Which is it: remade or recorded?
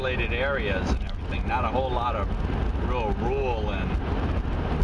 recorded